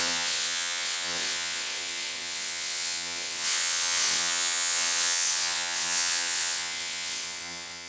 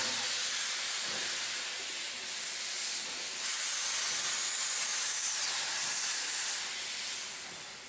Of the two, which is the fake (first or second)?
first